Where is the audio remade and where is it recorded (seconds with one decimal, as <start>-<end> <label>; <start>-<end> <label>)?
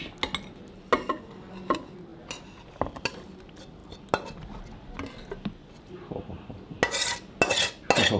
0.0-8.2 recorded